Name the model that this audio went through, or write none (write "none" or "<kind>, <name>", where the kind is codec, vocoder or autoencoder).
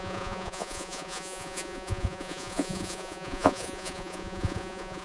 vocoder, Vocos